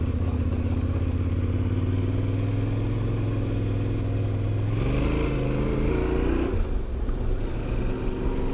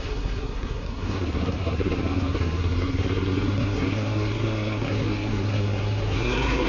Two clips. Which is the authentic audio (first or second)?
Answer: first